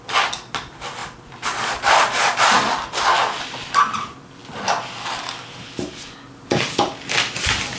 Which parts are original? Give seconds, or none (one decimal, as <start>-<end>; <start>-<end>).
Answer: 0.0-7.8